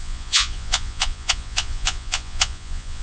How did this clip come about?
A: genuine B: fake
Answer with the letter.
B